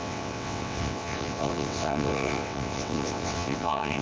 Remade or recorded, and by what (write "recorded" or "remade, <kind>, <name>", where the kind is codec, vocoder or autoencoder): remade, vocoder, WaveNeXt